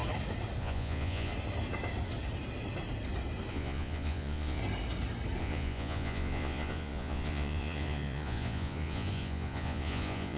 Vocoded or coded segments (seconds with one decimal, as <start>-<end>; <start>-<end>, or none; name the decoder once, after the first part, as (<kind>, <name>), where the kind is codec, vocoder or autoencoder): 0.6-1.3 (vocoder, Vocos); 3.5-4.6; 5.4-10.4

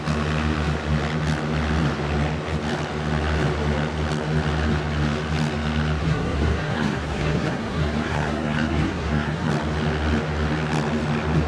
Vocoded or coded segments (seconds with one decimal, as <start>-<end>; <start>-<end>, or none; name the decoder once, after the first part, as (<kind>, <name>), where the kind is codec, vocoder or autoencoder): 6.0-9.5 (codec, SNAC)

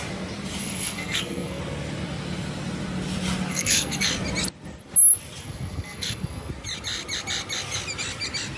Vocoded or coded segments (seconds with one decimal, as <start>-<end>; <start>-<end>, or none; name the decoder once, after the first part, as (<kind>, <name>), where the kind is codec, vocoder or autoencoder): 0.6-1.6 (codec, SNAC); 3.5-4.1; 5.4-6.5

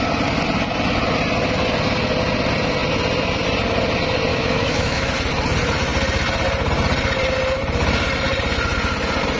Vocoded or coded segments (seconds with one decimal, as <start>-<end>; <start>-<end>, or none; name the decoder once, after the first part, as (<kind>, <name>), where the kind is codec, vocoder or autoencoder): 4.3-5.1 (autoencoder, DAC-VAE)

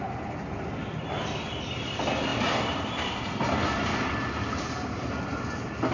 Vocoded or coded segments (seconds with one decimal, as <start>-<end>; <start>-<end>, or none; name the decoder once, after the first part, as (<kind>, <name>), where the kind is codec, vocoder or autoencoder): none

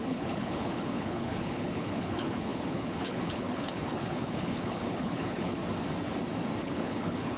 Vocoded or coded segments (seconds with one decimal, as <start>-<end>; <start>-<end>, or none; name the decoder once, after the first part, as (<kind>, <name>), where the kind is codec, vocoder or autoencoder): 0.0-5.6 (codec, HILCodec); 6.6-7.4